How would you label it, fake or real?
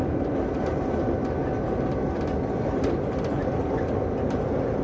real